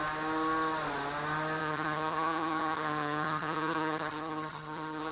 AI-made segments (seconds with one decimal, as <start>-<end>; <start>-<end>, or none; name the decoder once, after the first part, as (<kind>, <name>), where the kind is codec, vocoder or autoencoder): 1.6-5.1 (vocoder, HiFi-GAN)